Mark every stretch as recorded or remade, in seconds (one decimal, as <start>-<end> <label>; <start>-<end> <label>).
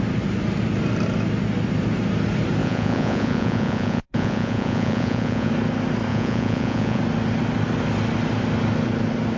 0.0-2.6 recorded; 2.6-5.5 remade; 5.5-6.1 recorded; 6.1-7.0 remade; 7.0-9.4 recorded